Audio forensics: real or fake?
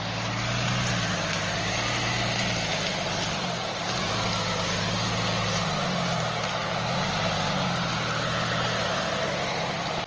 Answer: real